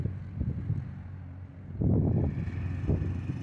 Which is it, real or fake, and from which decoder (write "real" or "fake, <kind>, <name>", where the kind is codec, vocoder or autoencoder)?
real